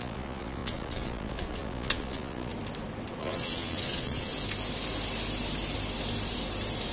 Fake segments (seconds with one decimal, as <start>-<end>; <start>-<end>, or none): 0.0-2.5; 3.2-4.3